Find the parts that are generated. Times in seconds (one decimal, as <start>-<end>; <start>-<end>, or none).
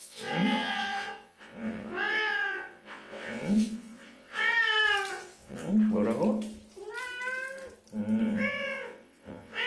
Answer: 0.0-4.5; 5.1-5.7; 8.2-9.7